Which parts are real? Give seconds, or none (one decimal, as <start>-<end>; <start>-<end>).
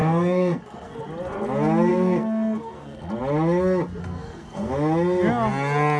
1.0-1.9; 3.1-4.0; 4.7-6.0